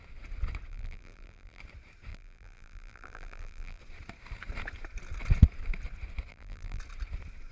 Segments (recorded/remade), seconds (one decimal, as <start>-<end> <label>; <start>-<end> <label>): 0.0-0.7 recorded; 0.7-1.6 remade; 1.6-2.1 recorded; 2.1-3.8 remade; 3.8-6.3 recorded; 6.3-6.8 remade; 6.8-7.5 recorded